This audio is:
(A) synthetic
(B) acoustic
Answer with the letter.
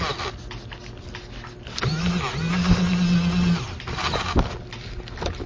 B